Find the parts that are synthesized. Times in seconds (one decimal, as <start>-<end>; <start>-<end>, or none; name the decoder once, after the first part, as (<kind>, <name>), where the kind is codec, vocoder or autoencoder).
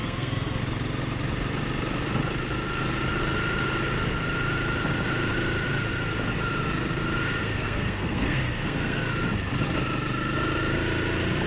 0.0-0.6 (codec, SNAC); 7.4-9.0